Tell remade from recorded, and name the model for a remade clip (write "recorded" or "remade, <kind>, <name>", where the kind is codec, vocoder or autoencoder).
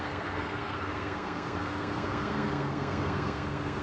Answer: remade, codec, SNAC